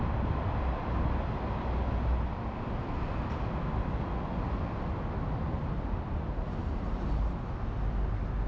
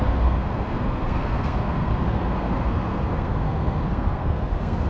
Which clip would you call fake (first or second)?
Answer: second